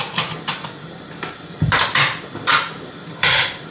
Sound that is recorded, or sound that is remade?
remade